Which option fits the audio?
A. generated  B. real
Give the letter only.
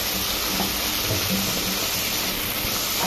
B